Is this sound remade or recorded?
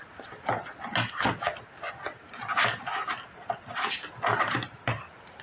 recorded